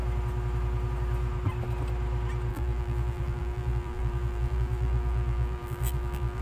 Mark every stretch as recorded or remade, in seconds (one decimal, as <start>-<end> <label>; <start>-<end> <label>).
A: 0.0-2.5 recorded; 2.5-6.4 remade